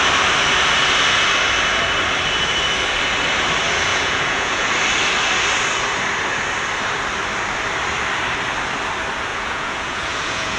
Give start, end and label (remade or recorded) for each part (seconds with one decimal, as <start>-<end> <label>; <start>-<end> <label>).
0.0-3.9 recorded; 3.9-4.7 remade; 4.7-9.3 recorded; 9.3-10.6 remade